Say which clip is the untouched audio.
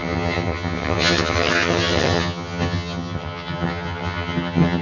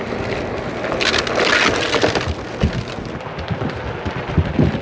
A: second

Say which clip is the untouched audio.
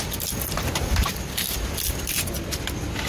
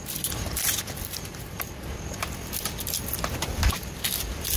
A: first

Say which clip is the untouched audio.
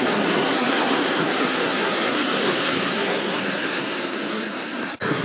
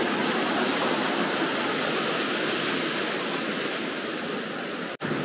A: second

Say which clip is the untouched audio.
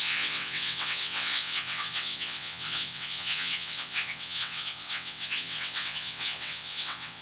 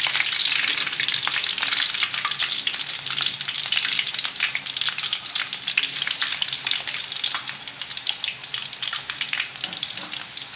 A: second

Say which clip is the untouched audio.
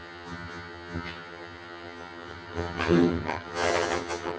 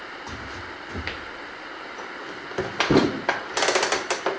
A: second